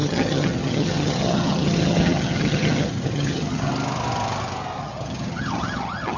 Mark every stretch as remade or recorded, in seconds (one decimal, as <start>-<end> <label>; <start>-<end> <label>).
0.0-3.7 remade; 3.7-4.8 recorded; 4.8-6.2 remade